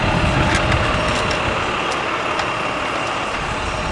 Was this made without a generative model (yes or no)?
yes